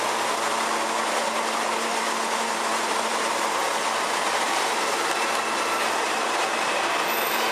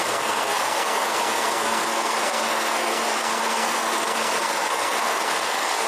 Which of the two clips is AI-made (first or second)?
second